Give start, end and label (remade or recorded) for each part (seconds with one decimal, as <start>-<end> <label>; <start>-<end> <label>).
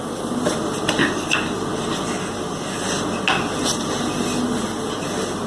0.0-5.5 recorded